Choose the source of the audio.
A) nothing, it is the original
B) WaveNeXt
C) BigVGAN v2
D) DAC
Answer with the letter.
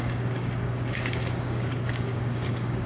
D